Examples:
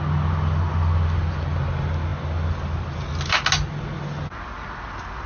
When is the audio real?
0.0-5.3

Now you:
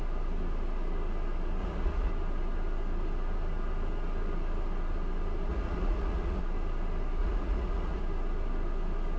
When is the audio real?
0.0-1.6; 2.1-5.5; 6.4-7.2; 8.0-9.2

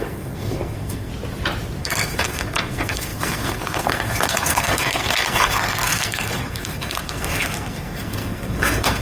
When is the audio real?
1.1-1.8